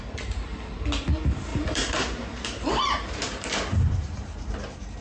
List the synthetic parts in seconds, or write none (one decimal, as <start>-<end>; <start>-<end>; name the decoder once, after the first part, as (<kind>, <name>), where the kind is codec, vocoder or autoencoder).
1.5-4.5 (vocoder, BigVGAN v2)